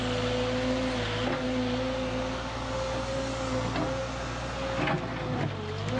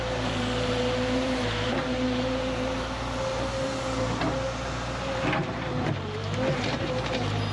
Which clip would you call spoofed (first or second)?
second